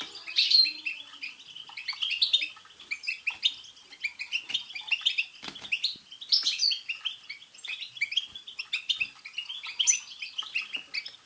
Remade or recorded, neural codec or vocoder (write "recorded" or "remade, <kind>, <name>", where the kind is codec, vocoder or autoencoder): recorded